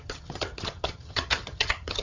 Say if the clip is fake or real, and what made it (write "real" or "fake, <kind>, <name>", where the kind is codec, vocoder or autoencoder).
fake, vocoder, HiFi-GAN